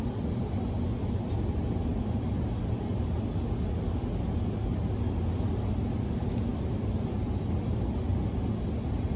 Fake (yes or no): no